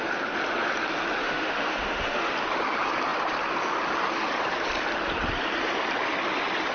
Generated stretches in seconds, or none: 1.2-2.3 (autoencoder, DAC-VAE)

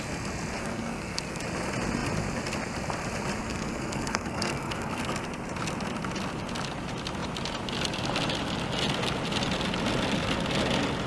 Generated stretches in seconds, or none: 0.6-1.4 (codec, SNAC); 3.4-5.0

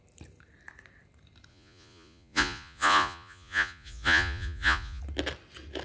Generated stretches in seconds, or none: 1.5-5.0 (vocoder, Vocos)

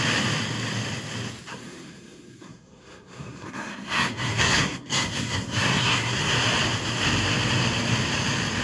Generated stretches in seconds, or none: 1.5-6.2 (codec, SNAC)

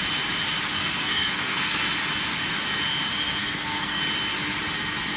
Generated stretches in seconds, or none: 0.8-1.8 (codec, SNAC); 3.4-4.0